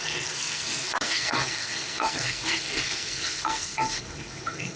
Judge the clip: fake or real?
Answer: fake